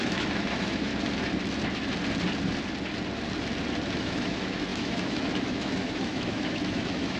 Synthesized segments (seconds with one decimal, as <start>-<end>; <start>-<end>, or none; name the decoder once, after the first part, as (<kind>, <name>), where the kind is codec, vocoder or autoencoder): 0.0-0.9 (autoencoder, DAC-VAE); 4.0-7.2